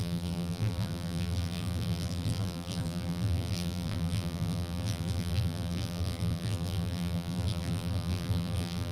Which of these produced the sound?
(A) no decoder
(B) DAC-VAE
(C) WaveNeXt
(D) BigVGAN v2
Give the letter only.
D